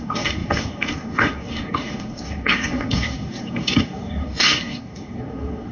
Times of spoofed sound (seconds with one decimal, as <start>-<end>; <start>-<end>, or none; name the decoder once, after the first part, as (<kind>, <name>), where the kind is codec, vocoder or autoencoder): 0.0-5.7 (codec, SNAC)